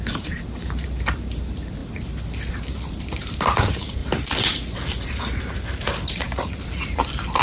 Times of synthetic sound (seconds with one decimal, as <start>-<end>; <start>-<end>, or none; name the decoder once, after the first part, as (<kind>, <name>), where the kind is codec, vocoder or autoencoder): 0.0-1.8 (vocoder, BigVGAN v2); 2.5-4.0; 5.1-7.4